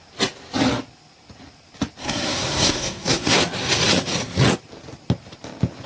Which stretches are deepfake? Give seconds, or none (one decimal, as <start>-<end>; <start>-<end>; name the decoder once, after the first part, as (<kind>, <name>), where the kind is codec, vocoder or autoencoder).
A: 2.0-3.4 (codec, SNAC)